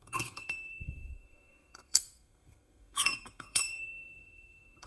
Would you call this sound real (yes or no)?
no